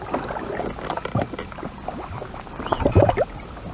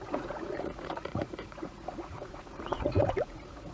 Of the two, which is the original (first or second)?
first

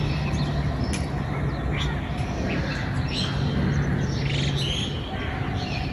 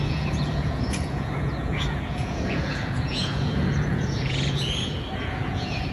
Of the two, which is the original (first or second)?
first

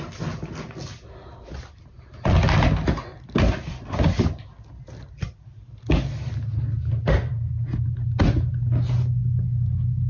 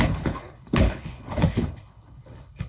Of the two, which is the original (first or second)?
first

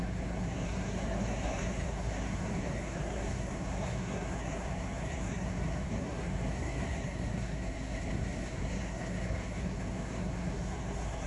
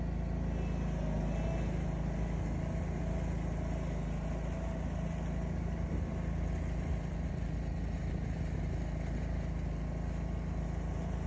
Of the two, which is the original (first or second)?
second